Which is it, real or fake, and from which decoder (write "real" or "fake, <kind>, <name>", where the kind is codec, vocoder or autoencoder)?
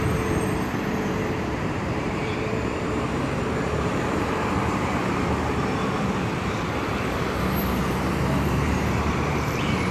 fake, vocoder, BigVGAN v2